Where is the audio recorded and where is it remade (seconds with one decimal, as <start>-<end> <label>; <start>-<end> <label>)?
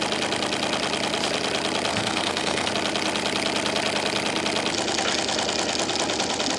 0.0-1.9 recorded; 1.9-2.7 remade; 2.7-6.6 recorded